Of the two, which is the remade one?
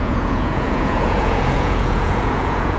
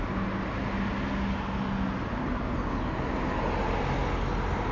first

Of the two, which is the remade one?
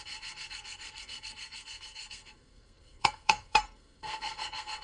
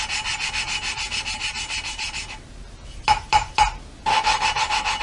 first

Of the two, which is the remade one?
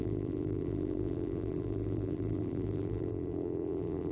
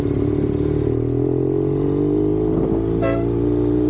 first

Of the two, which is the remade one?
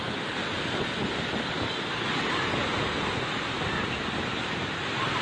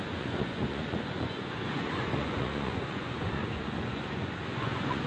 second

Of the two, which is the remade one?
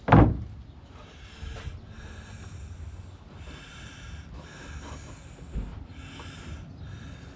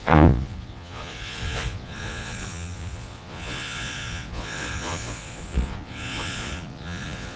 second